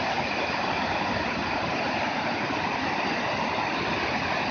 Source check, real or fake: real